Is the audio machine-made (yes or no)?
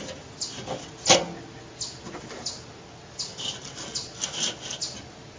no